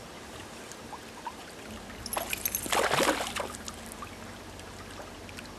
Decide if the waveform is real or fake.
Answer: real